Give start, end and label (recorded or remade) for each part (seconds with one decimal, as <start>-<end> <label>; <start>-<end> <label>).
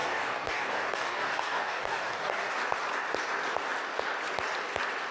0.0-2.5 remade; 2.5-5.1 recorded